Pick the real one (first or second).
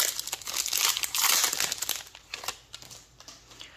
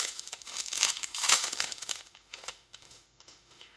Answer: first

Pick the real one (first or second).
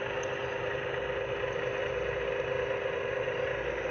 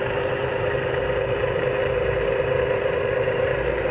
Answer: first